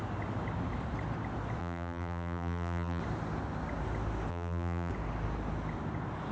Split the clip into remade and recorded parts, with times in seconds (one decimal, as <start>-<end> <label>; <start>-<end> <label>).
0.0-1.6 recorded; 1.6-3.0 remade; 3.0-4.3 recorded; 4.3-4.9 remade; 4.9-6.3 recorded